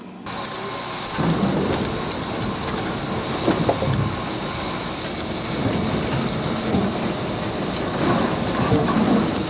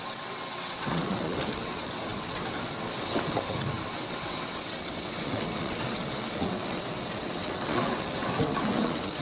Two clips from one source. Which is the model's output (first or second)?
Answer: second